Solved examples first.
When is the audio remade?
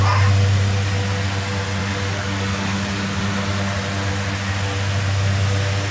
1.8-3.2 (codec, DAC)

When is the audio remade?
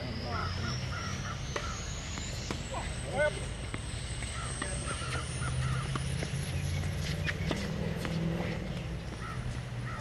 0.4-2.5 (codec, DAC); 3.3-5.4